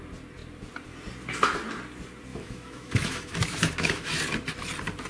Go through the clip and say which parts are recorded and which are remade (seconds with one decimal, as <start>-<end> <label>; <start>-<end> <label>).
0.0-2.3 recorded; 2.3-4.1 remade; 4.1-5.1 recorded